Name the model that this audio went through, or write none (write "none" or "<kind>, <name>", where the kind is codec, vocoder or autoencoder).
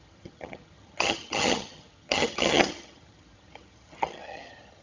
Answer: vocoder, HiFi-GAN